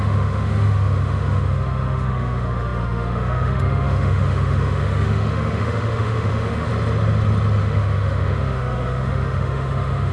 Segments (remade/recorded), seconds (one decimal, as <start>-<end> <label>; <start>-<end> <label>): 0.0-6.7 remade; 6.7-7.6 recorded; 7.6-10.1 remade